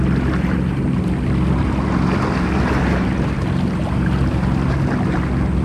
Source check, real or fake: real